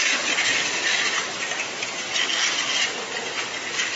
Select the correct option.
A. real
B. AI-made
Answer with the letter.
A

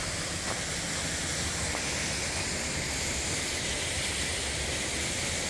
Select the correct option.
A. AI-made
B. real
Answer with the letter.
B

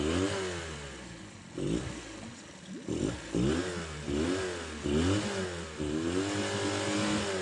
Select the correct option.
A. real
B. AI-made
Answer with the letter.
A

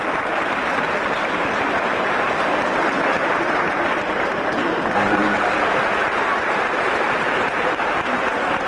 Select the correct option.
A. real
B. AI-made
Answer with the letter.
B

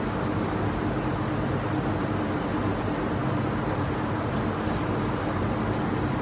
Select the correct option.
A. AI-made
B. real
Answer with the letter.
B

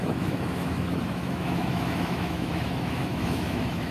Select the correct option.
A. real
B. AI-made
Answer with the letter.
B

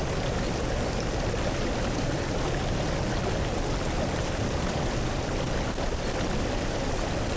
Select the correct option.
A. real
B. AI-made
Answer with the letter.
A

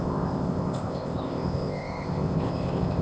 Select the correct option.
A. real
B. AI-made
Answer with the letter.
B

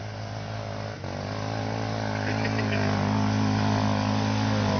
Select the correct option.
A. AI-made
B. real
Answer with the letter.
B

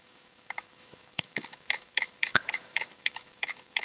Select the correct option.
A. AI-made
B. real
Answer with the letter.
A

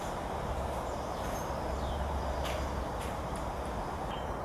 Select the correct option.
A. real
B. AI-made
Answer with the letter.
B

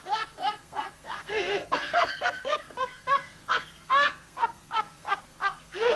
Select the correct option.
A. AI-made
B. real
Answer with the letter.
A